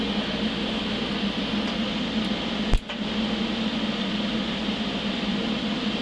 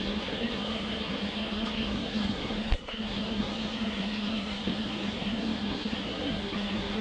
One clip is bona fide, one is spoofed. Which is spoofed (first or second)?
second